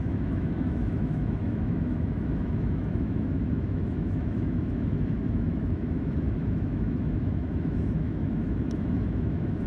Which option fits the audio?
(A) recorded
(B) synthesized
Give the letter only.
B